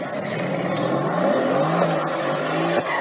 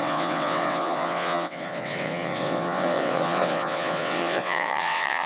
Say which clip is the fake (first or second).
second